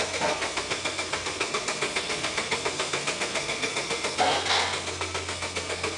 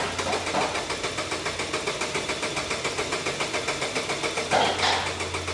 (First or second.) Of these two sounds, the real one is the second